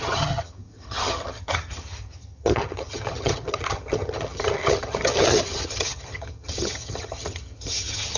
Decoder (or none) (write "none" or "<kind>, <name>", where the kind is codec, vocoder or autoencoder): vocoder, HiFi-GAN